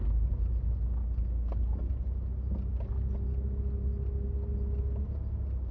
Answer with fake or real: real